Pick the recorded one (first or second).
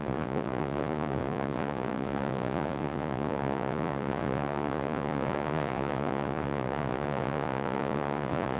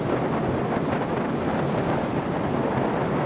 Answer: second